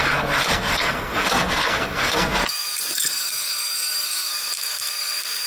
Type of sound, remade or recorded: remade